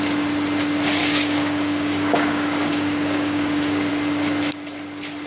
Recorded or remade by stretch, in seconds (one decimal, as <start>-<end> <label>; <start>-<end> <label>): 0.0-1.0 recorded; 1.0-3.9 remade; 3.9-5.3 recorded